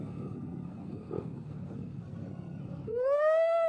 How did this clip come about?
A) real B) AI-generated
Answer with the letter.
B